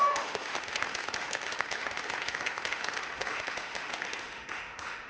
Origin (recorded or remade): remade